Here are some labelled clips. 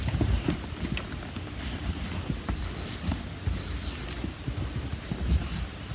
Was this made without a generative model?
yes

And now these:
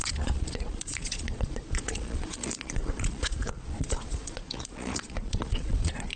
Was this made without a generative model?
no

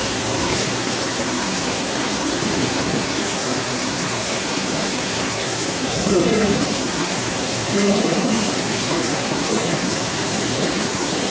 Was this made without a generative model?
no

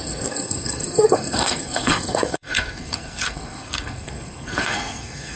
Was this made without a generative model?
no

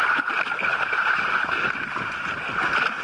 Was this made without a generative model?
yes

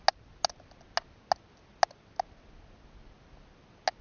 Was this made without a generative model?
yes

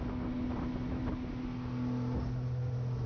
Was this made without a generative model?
yes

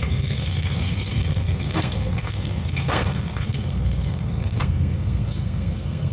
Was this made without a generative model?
no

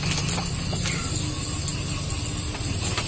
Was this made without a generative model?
yes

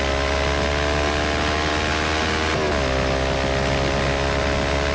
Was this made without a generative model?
yes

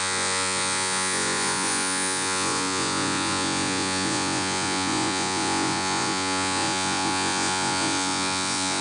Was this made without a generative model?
no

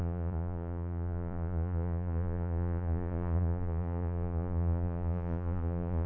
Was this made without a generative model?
no